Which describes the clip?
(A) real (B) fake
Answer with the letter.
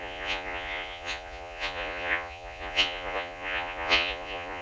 B